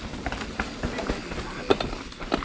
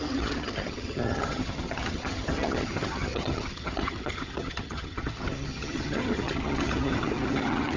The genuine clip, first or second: first